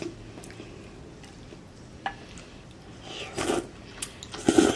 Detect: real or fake real